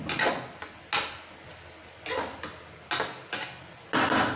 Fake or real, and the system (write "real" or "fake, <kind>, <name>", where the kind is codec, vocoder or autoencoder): real